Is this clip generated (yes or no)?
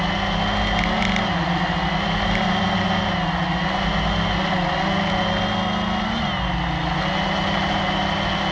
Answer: no